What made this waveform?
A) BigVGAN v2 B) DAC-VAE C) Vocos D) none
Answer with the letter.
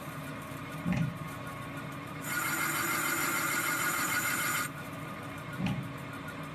A